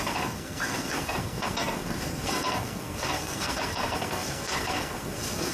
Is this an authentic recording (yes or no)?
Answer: no